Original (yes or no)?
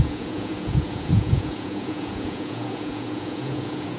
no